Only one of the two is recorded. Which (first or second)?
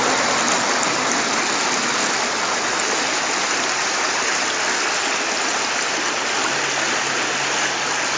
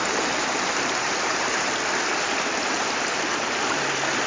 first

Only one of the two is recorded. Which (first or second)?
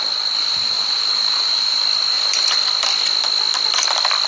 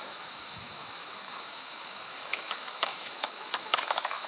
first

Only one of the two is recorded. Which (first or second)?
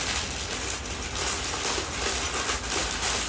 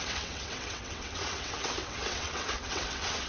first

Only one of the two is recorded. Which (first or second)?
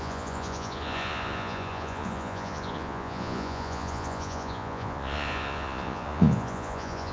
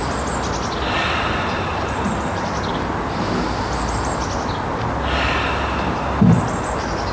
second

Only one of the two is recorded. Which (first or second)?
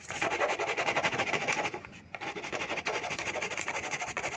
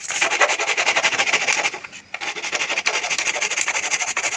second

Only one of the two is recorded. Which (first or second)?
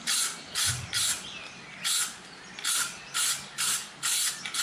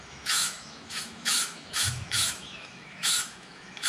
first